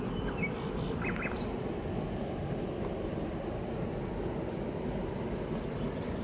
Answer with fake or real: real